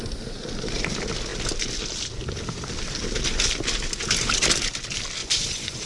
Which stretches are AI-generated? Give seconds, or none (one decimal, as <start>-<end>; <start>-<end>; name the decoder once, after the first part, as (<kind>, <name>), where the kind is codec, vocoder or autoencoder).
5.2-5.9 (vocoder, Vocos)